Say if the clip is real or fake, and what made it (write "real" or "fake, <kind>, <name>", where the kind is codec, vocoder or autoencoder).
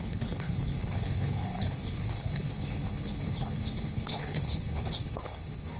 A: fake, codec, HILCodec